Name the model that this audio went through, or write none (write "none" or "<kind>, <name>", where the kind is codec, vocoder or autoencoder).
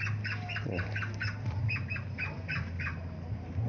none